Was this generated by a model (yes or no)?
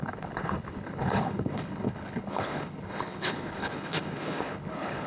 yes